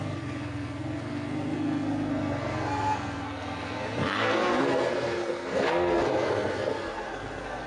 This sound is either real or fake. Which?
fake